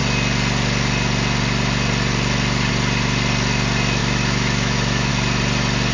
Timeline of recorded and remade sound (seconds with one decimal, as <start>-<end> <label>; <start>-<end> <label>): 0.0-4.0 recorded; 4.0-5.1 remade; 5.1-5.9 recorded